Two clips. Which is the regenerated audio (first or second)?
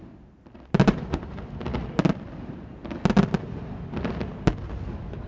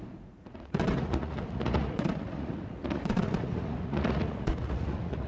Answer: second